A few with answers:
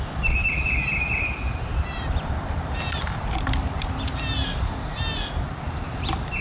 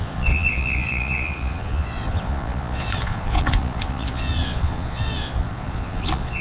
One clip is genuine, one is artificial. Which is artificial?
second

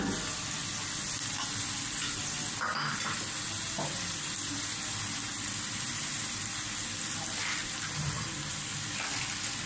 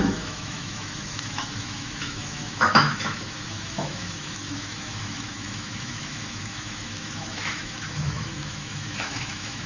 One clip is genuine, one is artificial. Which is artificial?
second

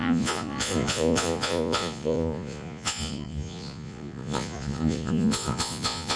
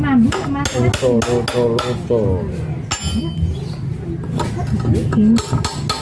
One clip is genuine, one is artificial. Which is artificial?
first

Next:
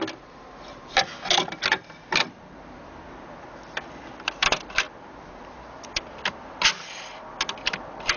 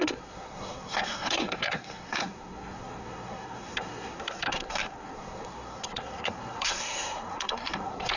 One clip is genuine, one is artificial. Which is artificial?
second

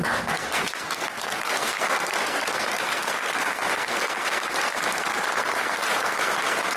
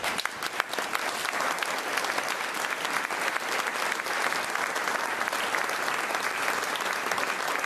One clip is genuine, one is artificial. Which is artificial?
first